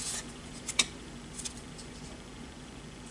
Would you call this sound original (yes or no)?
no